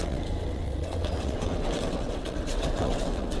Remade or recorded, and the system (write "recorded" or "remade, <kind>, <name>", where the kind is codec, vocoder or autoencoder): remade, vocoder, WaveNeXt